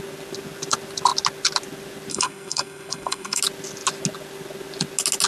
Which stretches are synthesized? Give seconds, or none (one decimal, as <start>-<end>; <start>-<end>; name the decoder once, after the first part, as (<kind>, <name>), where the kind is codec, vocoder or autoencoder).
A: 2.1-3.4 (codec, SNAC)